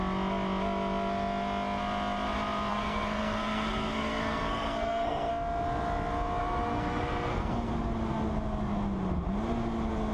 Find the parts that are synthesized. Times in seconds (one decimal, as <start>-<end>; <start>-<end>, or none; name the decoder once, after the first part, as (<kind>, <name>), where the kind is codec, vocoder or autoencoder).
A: 2.7-5.3 (codec, SNAC); 6.4-7.7